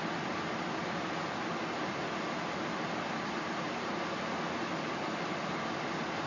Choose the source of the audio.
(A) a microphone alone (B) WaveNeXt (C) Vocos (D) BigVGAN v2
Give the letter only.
A